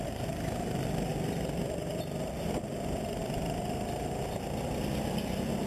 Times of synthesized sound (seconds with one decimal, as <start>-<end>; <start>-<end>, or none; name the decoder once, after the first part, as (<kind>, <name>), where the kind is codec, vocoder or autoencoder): none